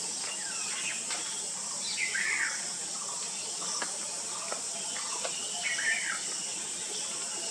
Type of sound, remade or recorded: recorded